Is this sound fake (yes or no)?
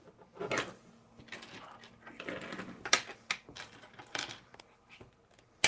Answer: no